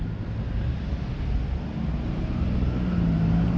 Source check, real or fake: real